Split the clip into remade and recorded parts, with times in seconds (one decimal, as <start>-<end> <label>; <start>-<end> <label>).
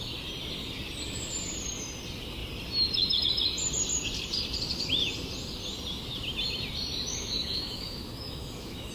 0.0-7.1 recorded; 7.1-8.9 remade